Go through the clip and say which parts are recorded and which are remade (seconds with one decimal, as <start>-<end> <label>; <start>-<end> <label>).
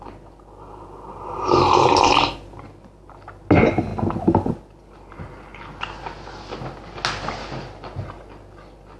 0.0-9.0 recorded